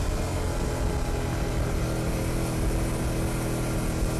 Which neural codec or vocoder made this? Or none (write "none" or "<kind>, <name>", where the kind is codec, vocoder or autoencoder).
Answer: none